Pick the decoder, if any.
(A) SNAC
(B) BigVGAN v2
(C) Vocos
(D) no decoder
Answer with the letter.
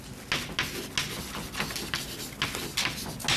D